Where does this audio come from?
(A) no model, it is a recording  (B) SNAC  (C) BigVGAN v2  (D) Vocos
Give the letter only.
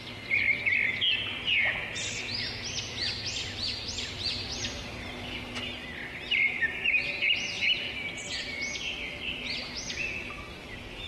A